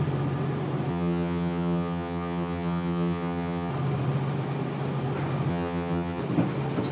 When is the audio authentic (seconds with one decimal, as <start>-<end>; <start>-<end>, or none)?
0.0-0.9; 3.7-5.5; 6.2-6.9